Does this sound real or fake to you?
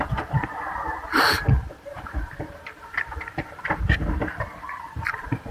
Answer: fake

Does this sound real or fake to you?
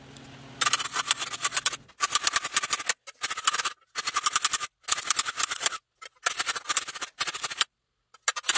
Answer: real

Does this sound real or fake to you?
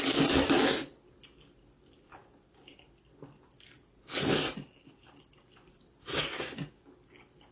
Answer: real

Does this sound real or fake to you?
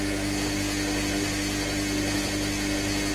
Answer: real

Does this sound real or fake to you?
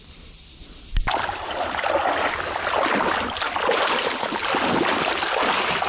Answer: real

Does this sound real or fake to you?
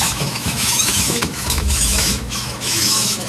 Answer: fake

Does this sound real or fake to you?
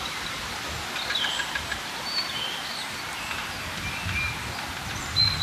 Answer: real